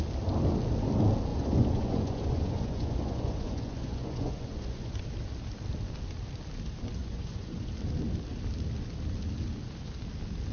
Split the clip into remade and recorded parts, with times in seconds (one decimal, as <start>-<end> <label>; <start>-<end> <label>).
0.0-1.3 recorded; 1.3-5.0 remade; 5.0-7.0 recorded; 7.0-7.7 remade; 7.7-10.5 recorded